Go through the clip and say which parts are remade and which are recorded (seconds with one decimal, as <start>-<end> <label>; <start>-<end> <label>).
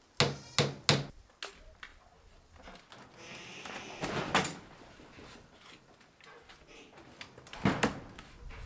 0.0-8.7 recorded